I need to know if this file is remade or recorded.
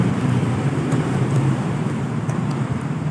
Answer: remade